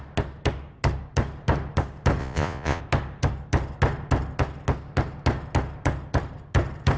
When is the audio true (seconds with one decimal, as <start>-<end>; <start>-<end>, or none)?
0.0-2.2; 2.8-7.0